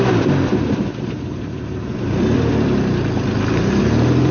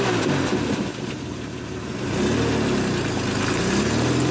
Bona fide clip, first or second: second